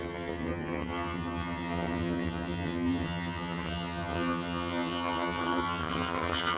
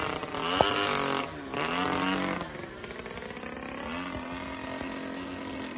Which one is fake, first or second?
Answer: first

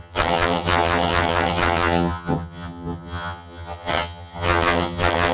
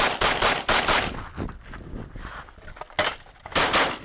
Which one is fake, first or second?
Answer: first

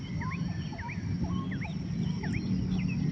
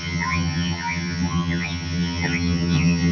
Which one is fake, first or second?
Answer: second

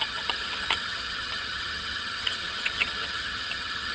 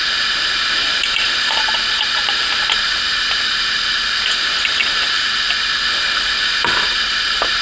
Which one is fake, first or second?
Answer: first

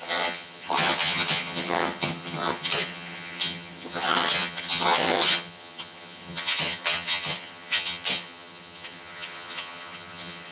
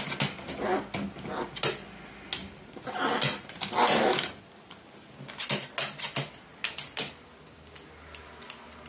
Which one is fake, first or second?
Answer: first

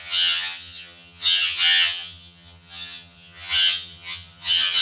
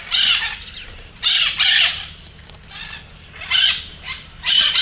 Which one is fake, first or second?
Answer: first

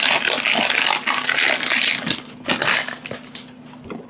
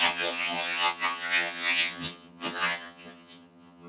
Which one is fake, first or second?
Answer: second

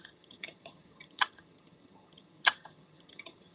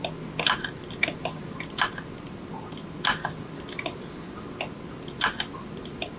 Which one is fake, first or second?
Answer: first